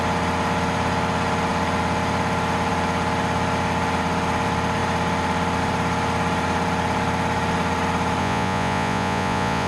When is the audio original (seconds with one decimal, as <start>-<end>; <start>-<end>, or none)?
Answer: 0.0-8.2